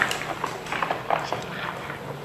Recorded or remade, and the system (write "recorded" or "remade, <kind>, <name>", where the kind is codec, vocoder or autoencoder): remade, vocoder, BigVGAN v2